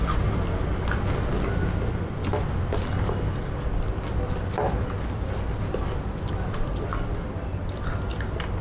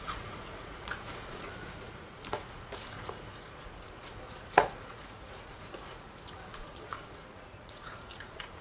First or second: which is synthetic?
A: second